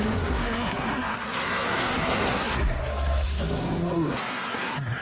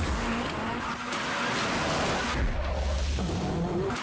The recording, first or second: second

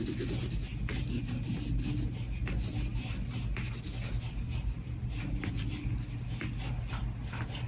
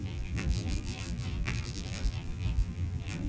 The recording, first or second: first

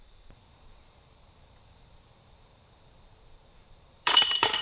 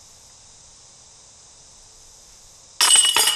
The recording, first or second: second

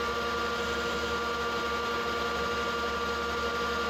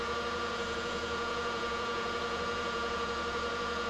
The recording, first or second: first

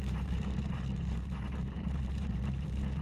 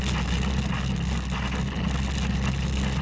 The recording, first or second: second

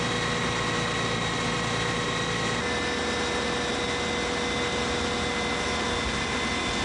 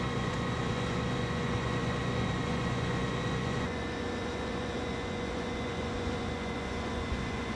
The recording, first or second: first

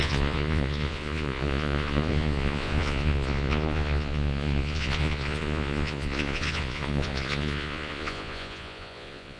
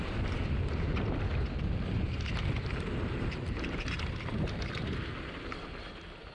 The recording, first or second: second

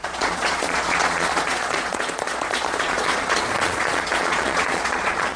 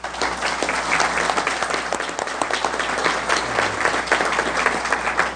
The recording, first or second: second